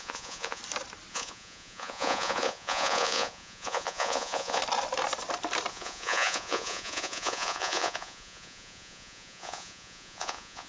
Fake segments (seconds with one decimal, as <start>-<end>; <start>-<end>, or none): 0.0-0.6; 1.1-4.6; 5.7-10.7